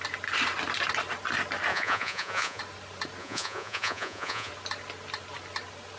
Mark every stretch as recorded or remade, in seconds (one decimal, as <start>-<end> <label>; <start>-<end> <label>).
0.0-1.7 recorded; 1.7-2.6 remade; 2.6-3.2 recorded; 3.2-4.5 remade; 4.5-6.0 recorded